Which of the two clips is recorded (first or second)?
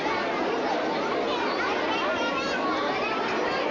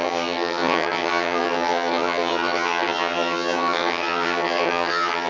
first